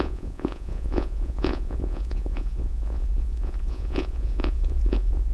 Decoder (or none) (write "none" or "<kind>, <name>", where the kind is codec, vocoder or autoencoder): vocoder, Vocos